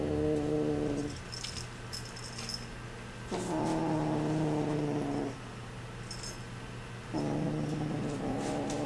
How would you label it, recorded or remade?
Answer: recorded